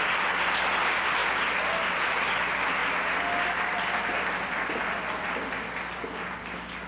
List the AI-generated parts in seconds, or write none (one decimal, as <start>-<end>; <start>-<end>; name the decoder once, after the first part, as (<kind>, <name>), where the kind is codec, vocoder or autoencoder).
none